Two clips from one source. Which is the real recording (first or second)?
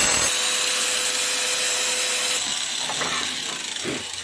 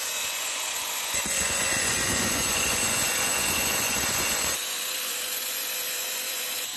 first